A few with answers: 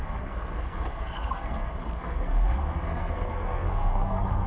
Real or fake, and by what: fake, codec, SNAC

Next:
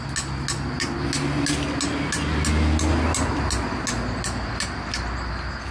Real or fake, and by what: real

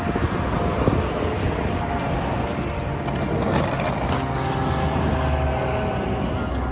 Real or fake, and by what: real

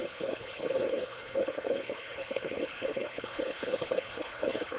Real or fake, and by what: fake, codec, HILCodec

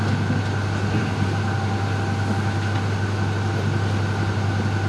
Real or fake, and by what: real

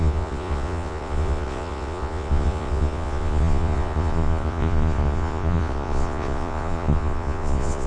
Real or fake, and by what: fake, vocoder, Vocos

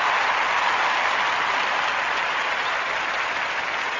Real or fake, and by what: real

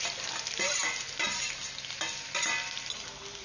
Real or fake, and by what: real